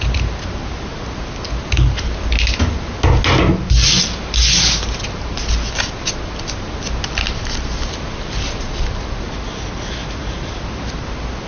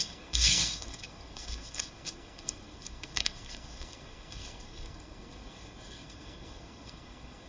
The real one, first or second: first